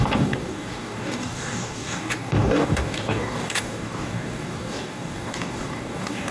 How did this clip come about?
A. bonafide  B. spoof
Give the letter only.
B